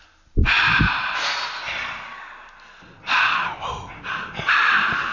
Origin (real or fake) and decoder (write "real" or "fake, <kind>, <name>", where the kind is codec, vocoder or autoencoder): real